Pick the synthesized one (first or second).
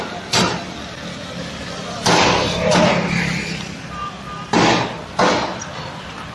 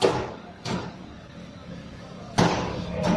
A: second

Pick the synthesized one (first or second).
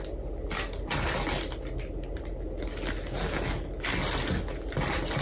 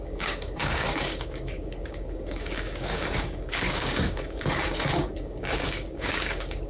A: second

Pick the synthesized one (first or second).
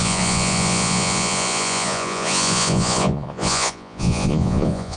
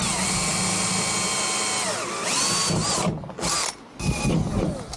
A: first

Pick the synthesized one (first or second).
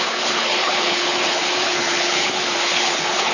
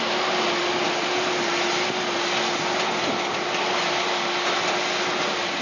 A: first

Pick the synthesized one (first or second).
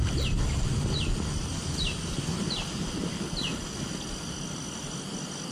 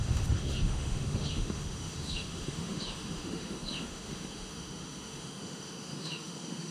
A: second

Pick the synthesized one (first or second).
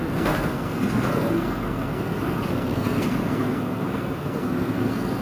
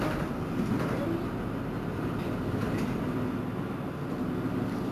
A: first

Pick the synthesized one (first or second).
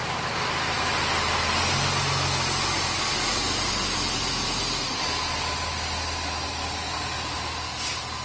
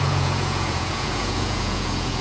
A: second